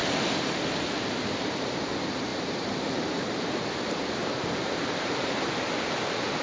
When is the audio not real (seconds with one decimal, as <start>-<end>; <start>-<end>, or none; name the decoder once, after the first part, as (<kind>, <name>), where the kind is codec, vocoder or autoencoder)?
2.3-6.4 (vocoder, BigVGAN v2)